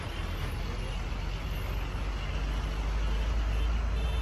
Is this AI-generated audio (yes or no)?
no